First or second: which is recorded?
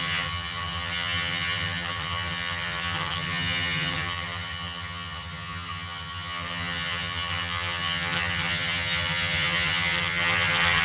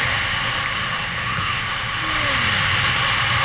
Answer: second